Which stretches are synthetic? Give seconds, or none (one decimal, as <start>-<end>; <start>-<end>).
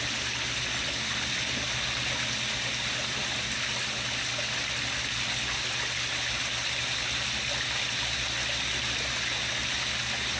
none